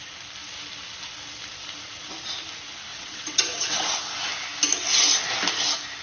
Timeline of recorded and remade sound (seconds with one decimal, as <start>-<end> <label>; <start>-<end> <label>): 0.0-2.9 recorded; 2.9-4.0 remade; 4.0-6.0 recorded